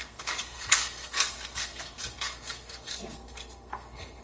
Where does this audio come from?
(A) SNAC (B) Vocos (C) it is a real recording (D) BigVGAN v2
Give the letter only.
A